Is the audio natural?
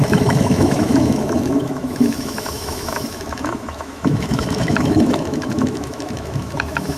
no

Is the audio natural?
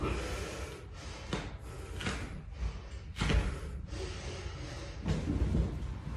yes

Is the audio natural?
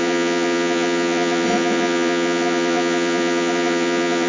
no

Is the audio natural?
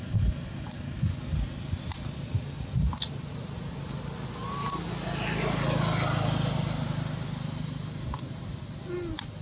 yes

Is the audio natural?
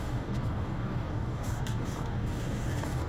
no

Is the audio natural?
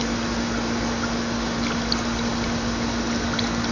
yes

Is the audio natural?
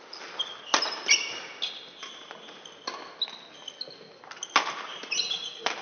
yes